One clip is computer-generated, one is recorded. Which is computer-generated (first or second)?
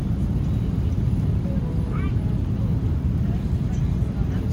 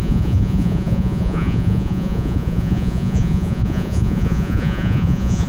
second